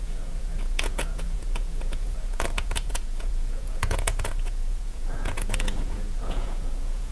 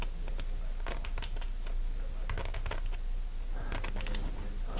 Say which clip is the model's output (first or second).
first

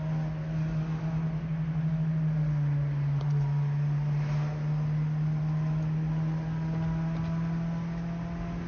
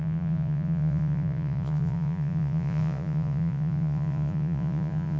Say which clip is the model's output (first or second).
second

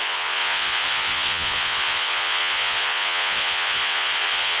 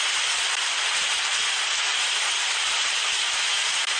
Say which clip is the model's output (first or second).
first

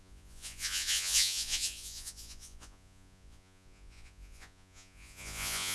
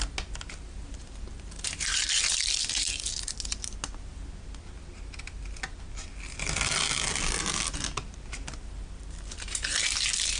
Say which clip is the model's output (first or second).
first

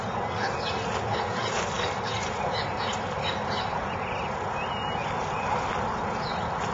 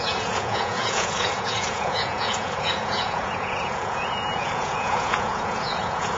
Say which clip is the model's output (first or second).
second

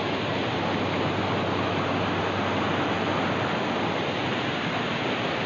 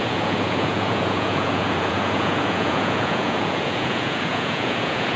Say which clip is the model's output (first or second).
second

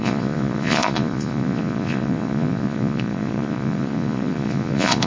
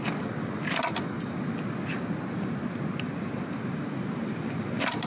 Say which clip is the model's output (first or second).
first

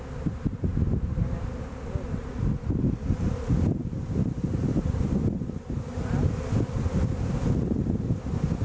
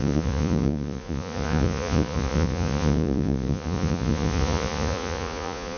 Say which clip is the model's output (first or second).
second